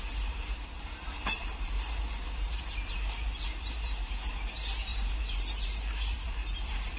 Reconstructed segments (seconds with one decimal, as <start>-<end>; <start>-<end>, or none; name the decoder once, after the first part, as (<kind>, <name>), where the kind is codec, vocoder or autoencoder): 0.0-7.0 (vocoder, BigVGAN v2)